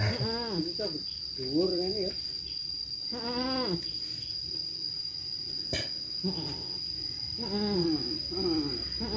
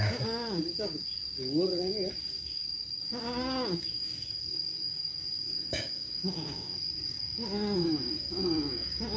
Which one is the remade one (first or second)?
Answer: second